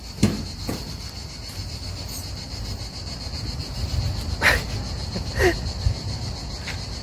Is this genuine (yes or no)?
yes